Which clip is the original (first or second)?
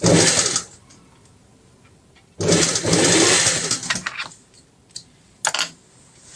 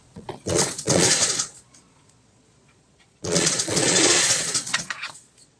first